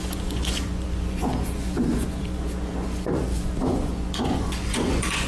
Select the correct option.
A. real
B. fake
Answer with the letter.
B